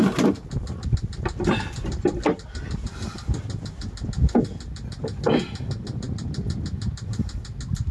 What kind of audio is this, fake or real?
real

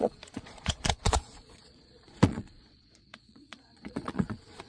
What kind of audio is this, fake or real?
fake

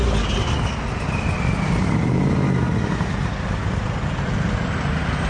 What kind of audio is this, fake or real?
real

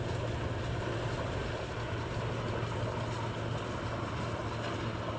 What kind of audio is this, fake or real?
real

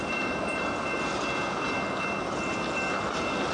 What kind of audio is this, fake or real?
real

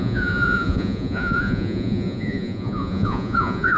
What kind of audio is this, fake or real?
fake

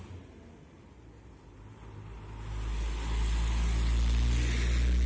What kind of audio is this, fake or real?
real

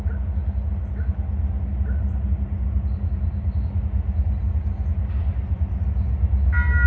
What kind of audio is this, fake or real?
real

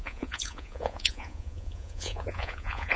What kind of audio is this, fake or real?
fake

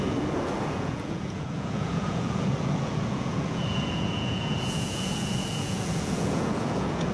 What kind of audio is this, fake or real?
fake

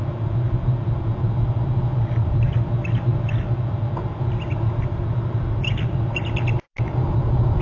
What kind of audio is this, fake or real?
real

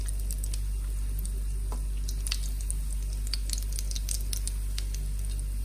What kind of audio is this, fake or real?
real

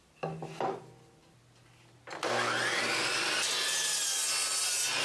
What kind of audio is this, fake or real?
real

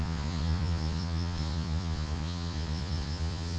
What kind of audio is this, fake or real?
fake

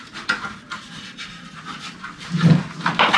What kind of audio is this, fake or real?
real